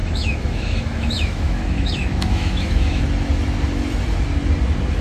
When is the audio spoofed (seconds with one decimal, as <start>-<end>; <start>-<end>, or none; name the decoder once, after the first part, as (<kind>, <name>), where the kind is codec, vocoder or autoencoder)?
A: 0.0-3.0 (autoencoder, DAC-VAE)